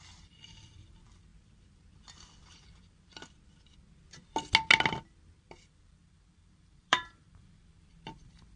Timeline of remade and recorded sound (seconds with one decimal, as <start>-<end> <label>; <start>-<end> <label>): 0.0-1.3 remade; 1.3-5.4 recorded; 5.4-8.6 remade